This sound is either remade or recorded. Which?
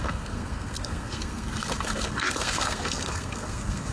remade